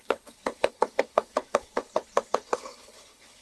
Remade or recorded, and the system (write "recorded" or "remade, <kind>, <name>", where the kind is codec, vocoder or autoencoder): remade, codec, HILCodec